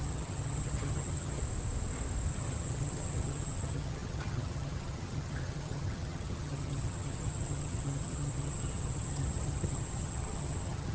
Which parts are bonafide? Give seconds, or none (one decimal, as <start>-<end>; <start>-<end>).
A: 1.4-2.3